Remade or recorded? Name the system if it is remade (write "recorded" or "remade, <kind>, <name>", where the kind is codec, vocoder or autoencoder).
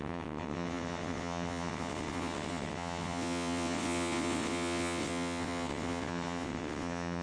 remade, vocoder, WaveNeXt